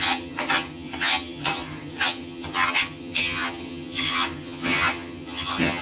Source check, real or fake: fake